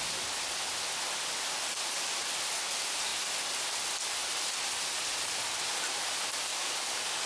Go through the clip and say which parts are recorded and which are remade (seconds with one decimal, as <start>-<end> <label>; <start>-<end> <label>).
0.0-6.5 recorded; 6.5-7.3 remade